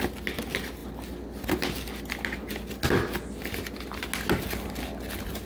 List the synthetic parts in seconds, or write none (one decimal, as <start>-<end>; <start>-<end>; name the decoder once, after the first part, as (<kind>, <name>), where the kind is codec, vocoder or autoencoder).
none